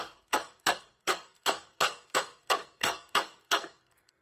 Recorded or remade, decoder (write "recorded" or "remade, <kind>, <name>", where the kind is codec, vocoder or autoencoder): remade, codec, SNAC